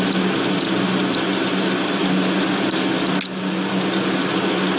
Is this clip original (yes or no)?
yes